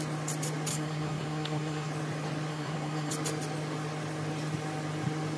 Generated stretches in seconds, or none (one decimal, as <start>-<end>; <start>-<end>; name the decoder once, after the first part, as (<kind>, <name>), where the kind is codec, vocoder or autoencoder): 0.7-1.9 (codec, SNAC); 2.5-3.1